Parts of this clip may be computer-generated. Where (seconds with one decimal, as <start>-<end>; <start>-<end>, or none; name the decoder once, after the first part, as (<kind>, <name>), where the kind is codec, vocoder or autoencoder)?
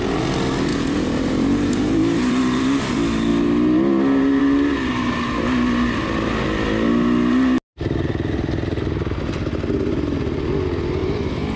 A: 0.7-2.9 (vocoder, BigVGAN v2); 11.0-11.6